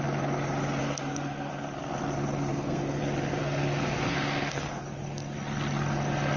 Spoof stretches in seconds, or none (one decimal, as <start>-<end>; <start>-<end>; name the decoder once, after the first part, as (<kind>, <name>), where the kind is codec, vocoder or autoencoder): 0.8-1.5 (codec, SNAC); 2.5-3.0; 3.4-4.8